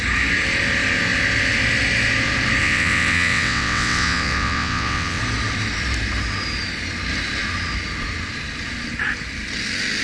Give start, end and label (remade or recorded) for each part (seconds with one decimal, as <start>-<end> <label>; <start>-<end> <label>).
0.0-2.6 recorded; 2.6-5.2 remade; 5.2-10.0 recorded